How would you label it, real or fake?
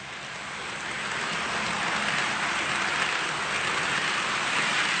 real